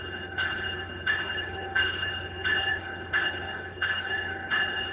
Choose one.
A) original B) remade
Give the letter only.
B